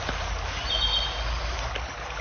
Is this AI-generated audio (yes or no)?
no